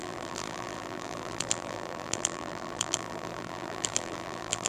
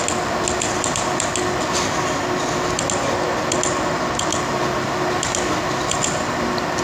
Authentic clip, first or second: second